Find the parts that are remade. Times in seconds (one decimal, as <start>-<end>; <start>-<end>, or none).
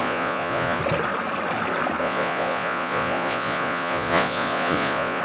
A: 0.0-0.8; 2.0-5.2